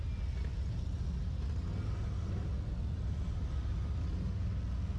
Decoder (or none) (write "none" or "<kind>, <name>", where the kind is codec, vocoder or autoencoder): none